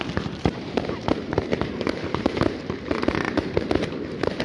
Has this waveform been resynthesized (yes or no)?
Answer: yes